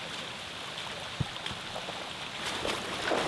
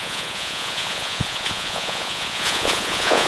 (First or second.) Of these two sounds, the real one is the first